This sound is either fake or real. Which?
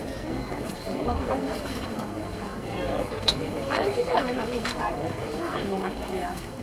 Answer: fake